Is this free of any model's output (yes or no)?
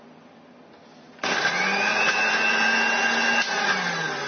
yes